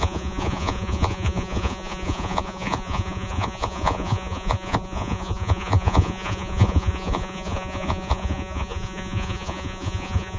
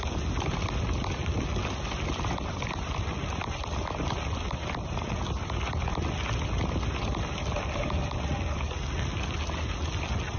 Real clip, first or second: second